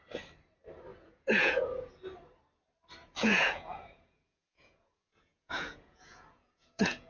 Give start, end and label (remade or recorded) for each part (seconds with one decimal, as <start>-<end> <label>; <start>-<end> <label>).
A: 0.0-0.9 recorded; 0.9-1.9 remade; 1.9-3.0 recorded; 3.0-7.1 remade